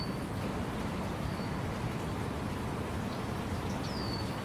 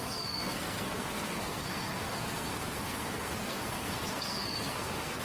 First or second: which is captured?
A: first